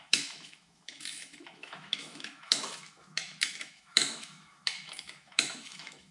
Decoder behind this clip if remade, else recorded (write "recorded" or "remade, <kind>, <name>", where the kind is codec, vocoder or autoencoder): remade, autoencoder, DAC-VAE